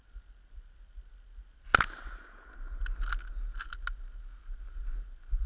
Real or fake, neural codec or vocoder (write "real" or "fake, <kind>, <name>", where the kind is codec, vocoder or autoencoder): real